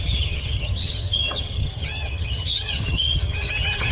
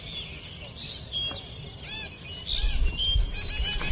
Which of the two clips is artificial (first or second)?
first